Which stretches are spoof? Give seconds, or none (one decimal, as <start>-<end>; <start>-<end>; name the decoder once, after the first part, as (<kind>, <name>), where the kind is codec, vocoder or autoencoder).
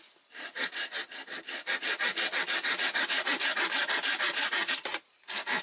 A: 0.5-1.0 (vocoder, BigVGAN v2)